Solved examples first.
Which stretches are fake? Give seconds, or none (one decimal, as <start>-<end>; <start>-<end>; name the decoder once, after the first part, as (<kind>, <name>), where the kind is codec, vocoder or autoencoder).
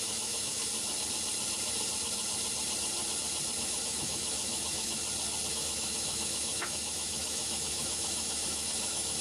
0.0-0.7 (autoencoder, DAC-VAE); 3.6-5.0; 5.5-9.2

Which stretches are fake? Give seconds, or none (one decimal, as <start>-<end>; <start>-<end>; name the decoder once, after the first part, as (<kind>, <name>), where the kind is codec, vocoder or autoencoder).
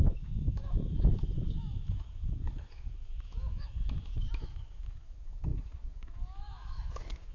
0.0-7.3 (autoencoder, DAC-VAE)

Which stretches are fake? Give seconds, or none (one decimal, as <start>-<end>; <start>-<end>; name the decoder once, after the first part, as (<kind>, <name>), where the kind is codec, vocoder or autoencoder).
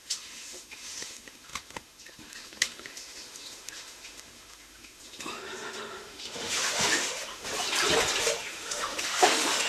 0.0-7.5 (autoencoder, DAC-VAE); 8.2-9.7